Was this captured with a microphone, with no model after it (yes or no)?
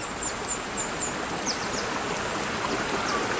yes